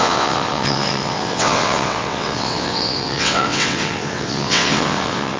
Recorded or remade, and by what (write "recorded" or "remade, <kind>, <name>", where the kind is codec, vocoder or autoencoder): remade, vocoder, WaveNeXt